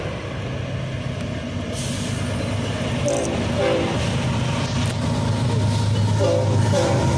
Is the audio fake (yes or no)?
no